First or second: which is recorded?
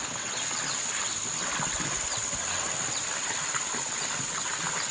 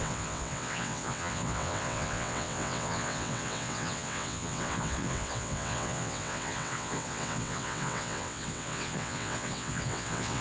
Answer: first